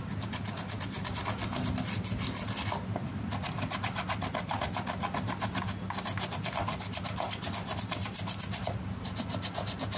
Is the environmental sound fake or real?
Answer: real